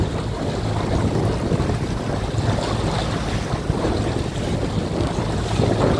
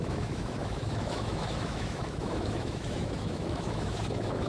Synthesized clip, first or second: second